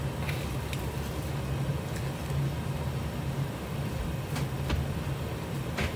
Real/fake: real